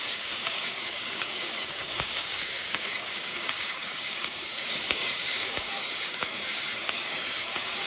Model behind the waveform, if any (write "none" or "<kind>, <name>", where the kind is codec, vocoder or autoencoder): codec, DAC